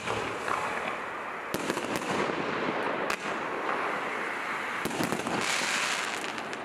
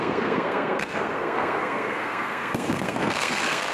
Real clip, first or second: first